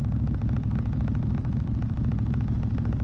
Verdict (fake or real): fake